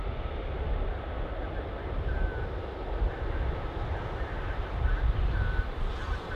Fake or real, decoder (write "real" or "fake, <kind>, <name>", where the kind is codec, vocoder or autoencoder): real